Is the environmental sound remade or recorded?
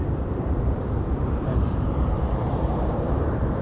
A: remade